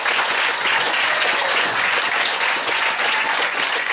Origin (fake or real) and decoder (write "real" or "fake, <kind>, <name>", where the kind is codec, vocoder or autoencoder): fake, vocoder, Vocos